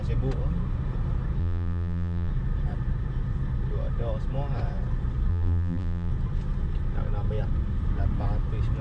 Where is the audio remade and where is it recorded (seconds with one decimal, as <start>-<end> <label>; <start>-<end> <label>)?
0.0-1.4 recorded; 1.4-2.3 remade; 2.3-5.3 recorded; 5.3-6.1 remade; 6.1-8.8 recorded